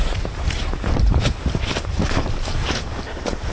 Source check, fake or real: fake